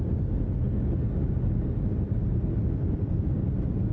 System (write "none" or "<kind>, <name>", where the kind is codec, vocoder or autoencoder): none